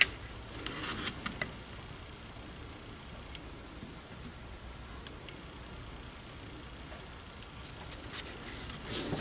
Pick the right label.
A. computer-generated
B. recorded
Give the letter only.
B